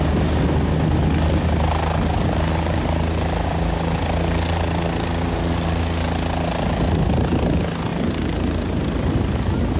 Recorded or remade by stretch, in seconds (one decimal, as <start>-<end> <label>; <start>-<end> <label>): 0.0-7.9 recorded; 7.9-8.8 remade; 8.8-9.8 recorded